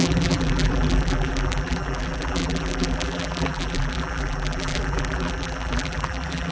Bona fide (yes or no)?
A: no